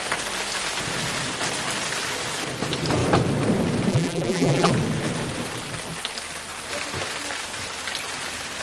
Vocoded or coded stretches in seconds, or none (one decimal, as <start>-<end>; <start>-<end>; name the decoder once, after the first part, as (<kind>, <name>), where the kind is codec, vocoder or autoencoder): 3.9-4.7 (vocoder, BigVGAN v2)